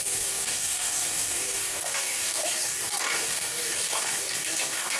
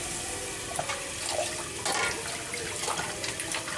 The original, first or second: second